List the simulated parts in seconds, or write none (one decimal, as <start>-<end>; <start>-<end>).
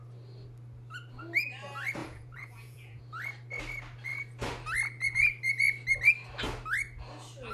2.0-3.0